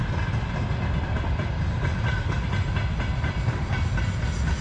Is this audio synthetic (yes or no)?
no